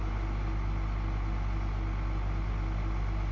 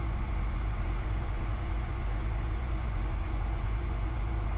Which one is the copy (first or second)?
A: second